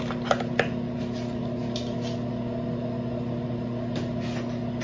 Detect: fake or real real